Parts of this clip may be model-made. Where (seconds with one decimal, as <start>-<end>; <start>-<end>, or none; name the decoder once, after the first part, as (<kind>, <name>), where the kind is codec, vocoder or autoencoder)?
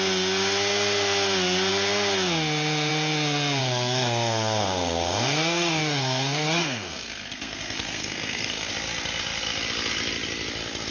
3.6-8.7 (codec, SNAC)